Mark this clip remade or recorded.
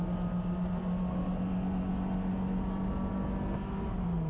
recorded